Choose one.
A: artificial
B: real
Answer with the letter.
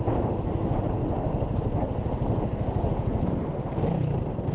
B